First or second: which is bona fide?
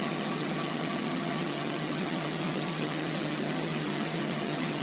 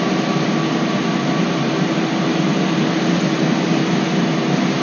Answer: second